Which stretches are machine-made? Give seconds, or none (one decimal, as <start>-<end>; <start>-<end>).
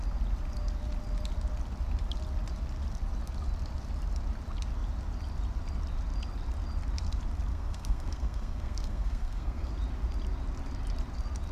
7.5-9.7